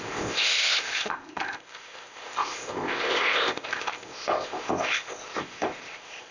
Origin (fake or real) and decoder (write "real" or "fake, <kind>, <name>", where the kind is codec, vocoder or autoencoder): fake, codec, ZipCodec